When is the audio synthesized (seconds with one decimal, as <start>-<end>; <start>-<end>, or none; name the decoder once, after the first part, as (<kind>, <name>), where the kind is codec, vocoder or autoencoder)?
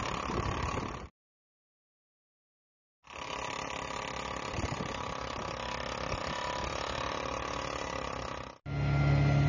none